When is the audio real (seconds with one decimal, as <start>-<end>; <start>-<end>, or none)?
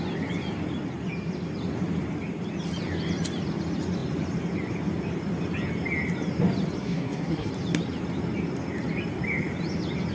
0.0-6.8; 7.5-10.1